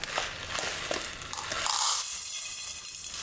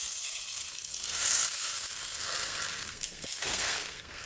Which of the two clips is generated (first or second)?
second